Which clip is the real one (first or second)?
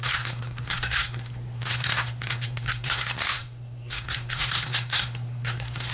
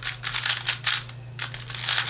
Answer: second